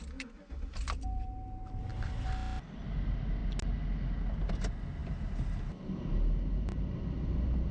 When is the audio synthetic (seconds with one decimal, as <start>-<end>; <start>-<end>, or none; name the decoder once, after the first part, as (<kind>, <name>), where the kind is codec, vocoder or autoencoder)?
none